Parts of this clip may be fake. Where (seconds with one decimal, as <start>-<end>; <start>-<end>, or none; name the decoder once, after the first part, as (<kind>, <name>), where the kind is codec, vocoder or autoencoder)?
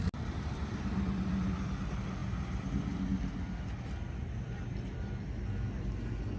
none